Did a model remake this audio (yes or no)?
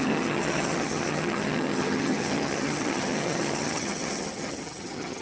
yes